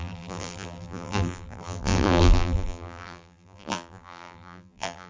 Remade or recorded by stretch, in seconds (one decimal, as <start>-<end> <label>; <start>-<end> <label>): 0.0-5.1 remade